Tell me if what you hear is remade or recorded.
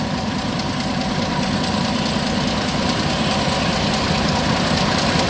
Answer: remade